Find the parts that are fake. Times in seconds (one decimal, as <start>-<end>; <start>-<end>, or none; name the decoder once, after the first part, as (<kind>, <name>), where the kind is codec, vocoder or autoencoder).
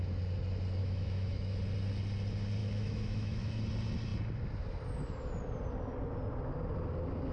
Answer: 0.8-1.6 (autoencoder, DAC-VAE); 2.6-3.6